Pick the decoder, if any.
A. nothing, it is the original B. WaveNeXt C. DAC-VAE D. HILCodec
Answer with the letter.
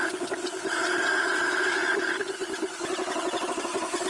A